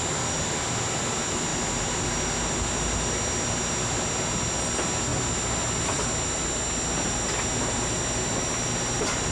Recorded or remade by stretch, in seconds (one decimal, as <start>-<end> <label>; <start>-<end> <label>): 0.0-9.3 recorded